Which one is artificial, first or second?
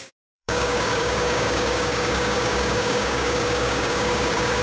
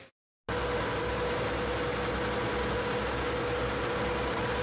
first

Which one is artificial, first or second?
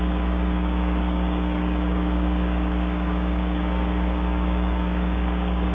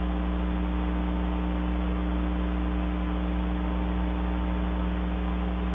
first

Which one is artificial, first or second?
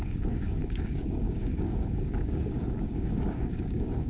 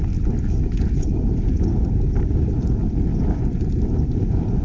first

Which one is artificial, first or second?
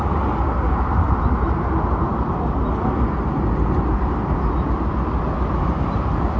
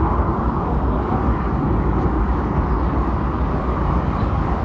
second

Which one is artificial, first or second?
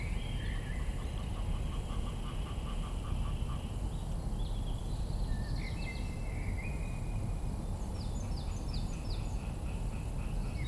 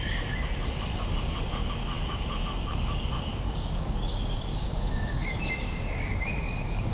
second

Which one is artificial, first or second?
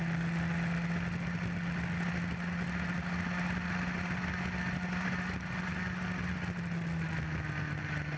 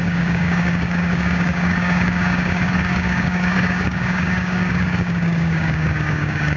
second